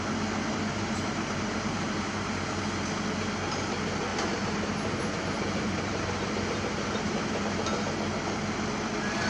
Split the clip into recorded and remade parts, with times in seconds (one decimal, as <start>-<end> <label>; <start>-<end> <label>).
0.0-0.7 recorded; 0.7-2.6 remade; 2.6-4.1 recorded; 4.1-7.4 remade; 7.4-9.3 recorded